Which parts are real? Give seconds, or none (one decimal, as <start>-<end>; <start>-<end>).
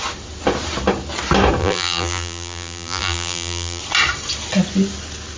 0.0-1.6; 3.8-5.4